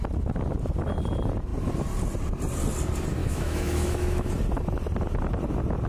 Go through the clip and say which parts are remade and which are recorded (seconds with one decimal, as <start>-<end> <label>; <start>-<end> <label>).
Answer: 0.0-3.2 recorded; 3.2-4.3 remade; 4.3-5.9 recorded